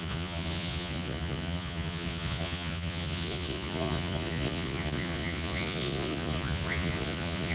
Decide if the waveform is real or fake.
fake